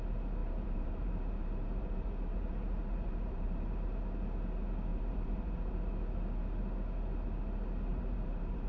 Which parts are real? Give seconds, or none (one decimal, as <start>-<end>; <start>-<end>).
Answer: 0.0-0.4; 3.7-4.9; 5.8-7.9